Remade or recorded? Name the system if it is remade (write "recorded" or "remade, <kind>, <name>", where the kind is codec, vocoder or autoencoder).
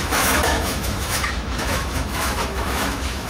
remade, autoencoder, DAC-VAE